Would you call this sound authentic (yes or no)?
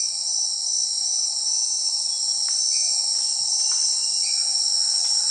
yes